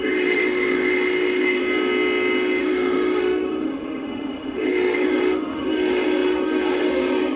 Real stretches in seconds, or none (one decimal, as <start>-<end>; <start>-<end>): 1.6-2.6